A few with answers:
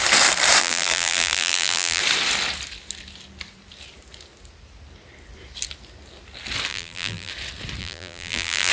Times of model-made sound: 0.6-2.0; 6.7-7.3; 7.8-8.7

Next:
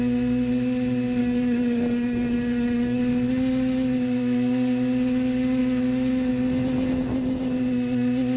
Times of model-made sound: 1.2-3.0

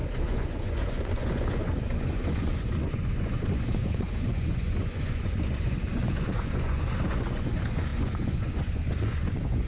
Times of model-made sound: 0.0-9.7